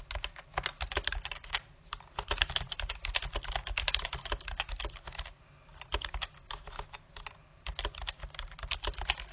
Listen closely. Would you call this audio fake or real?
real